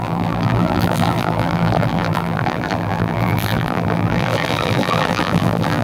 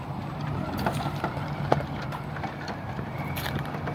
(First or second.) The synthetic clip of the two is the first